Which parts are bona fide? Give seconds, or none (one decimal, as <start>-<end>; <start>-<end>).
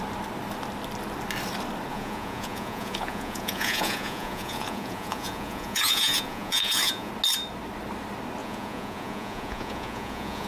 0.0-1.9; 7.1-8.4